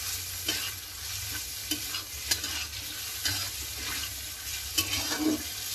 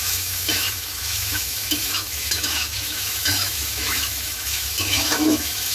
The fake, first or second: second